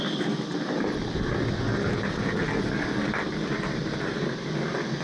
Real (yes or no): yes